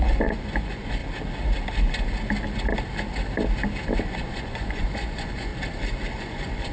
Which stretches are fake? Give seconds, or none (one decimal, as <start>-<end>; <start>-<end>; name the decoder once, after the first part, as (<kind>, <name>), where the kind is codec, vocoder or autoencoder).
0.0-1.0 (vocoder, Vocos); 4.1-5.5; 6.1-6.7